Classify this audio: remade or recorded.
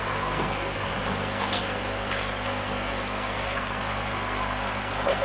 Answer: remade